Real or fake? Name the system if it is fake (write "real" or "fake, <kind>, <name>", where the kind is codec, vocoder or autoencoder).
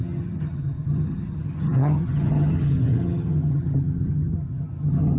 fake, vocoder, HiFi-GAN